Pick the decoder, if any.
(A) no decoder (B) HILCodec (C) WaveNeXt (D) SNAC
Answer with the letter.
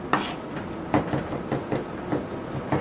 A